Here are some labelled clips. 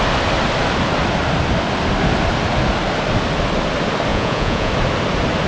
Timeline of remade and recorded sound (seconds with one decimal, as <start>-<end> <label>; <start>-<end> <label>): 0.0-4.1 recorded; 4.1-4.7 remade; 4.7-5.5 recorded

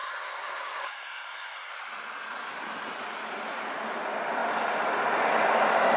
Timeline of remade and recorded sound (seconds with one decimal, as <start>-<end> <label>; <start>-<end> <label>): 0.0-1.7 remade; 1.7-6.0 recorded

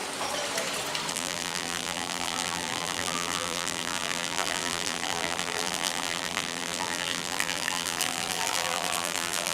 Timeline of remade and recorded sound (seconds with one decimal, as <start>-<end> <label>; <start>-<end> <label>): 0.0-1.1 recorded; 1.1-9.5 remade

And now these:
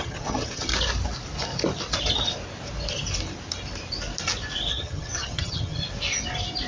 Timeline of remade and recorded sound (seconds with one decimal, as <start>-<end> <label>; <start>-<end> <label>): 0.0-0.7 remade; 0.7-4.7 recorded; 4.7-5.8 remade; 5.8-6.7 recorded